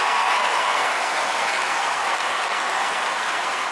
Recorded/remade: remade